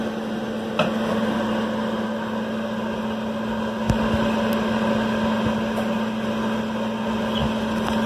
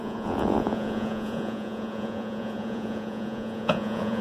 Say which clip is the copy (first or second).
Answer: second